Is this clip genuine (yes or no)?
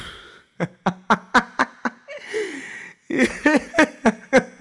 yes